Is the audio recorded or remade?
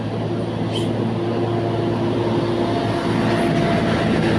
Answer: recorded